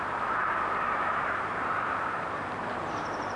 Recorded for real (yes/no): no